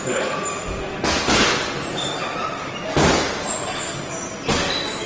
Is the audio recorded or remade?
recorded